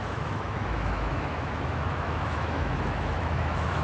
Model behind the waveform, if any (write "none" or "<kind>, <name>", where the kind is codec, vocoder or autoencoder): autoencoder, DAC-VAE